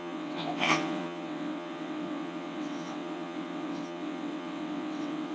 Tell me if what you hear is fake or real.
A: fake